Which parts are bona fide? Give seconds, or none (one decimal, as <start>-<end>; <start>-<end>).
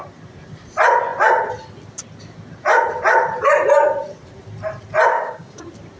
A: 0.0-5.1; 5.6-6.0